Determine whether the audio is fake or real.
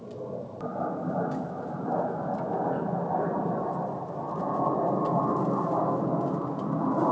real